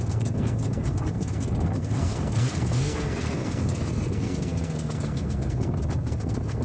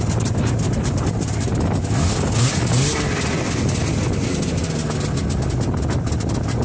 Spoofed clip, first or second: first